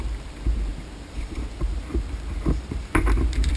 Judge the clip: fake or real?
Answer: fake